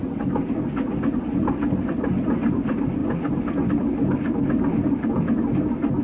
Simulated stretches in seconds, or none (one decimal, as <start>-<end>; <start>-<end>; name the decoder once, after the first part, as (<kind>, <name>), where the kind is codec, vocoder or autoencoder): none

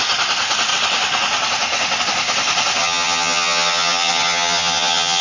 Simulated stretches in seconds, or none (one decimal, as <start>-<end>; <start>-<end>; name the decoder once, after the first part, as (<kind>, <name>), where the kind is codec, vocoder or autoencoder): 2.8-5.2 (vocoder, HiFi-GAN)

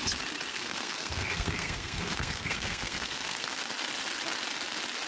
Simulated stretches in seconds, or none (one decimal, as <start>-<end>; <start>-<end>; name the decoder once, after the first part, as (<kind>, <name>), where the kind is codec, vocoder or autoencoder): 0.5-3.6 (codec, SNAC)

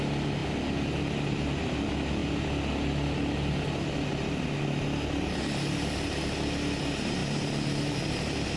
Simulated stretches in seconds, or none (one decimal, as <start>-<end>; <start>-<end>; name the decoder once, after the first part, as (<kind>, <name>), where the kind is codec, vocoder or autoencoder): none

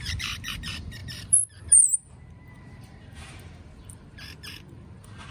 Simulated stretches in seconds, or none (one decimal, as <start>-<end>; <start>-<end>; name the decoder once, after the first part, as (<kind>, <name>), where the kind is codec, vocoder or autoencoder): 0.0-5.3 (vocoder, BigVGAN v2)